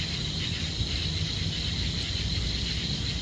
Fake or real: real